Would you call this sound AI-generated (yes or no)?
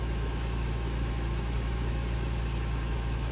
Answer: yes